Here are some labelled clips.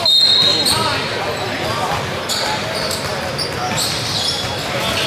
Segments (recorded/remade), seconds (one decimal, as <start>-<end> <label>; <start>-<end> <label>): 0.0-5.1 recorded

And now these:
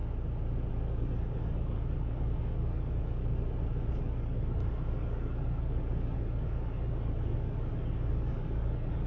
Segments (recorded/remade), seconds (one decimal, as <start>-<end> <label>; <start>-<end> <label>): 0.0-0.7 recorded; 0.7-3.2 remade; 3.2-4.0 recorded; 4.0-9.1 remade

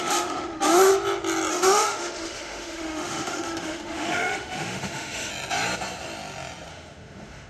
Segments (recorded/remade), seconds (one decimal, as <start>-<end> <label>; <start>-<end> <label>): 0.0-0.9 remade; 0.9-1.5 recorded; 1.5-5.3 remade; 5.3-6.7 recorded; 6.7-7.5 remade

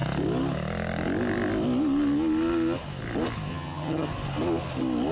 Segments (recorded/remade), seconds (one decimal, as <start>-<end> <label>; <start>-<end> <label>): 0.0-3.5 recorded; 3.5-4.1 remade; 4.1-5.1 recorded